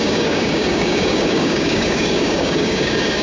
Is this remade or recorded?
remade